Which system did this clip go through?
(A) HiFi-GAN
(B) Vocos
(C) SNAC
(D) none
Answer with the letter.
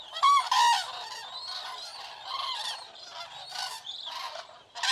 D